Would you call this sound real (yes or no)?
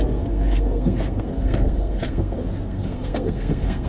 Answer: no